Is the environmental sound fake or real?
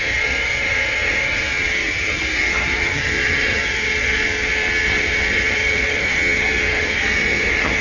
fake